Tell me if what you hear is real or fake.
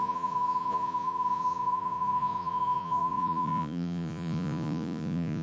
fake